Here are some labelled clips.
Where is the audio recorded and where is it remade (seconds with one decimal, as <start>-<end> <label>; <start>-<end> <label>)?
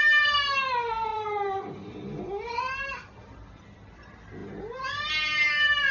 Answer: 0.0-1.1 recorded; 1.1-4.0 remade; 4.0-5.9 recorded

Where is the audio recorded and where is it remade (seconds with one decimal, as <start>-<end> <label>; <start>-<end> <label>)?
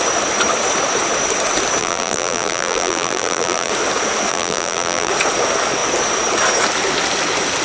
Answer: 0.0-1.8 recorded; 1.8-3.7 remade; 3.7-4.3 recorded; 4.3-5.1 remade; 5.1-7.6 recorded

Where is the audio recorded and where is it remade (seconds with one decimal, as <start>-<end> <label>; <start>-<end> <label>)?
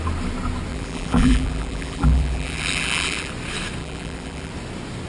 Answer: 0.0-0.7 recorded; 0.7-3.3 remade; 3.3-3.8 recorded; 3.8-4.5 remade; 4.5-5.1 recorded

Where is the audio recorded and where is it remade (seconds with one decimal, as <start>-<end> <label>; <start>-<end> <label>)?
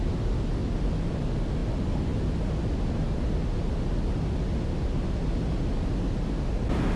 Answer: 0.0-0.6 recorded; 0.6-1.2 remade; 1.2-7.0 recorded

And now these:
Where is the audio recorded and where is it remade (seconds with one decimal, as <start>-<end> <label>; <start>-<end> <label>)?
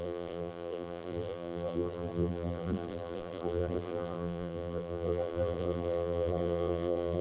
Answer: 0.0-7.2 remade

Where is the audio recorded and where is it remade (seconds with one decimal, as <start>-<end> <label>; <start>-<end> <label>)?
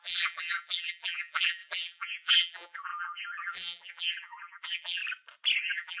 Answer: 0.0-5.0 remade; 5.0-5.6 recorded; 5.6-6.0 remade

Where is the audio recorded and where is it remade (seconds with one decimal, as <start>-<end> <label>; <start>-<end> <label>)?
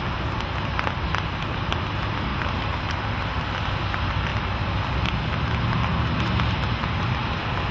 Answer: 0.0-2.3 recorded; 2.3-3.2 remade; 3.2-7.7 recorded